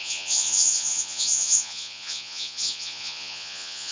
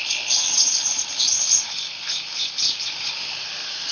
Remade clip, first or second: first